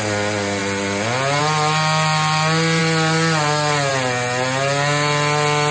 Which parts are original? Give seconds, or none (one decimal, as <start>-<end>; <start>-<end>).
0.0-5.7